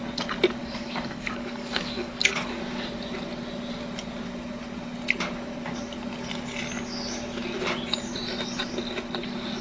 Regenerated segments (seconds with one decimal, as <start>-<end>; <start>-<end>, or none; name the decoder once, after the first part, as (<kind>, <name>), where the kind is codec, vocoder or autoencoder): 0.6-2.6 (codec, DAC)